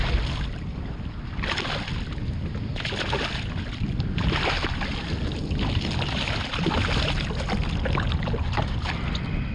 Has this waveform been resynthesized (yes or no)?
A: no